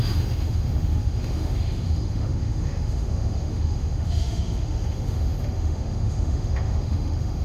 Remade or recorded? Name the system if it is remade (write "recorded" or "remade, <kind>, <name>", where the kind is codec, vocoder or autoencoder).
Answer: remade, autoencoder, DAC-VAE